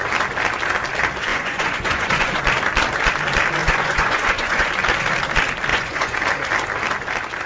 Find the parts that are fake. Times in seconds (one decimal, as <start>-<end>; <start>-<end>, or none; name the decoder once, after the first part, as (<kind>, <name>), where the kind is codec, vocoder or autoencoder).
1.3-2.4 (vocoder, Vocos); 3.6-4.7; 5.7-6.2